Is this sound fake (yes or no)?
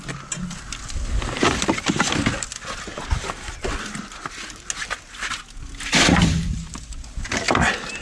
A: no